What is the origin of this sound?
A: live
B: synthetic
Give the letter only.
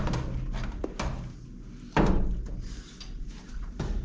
A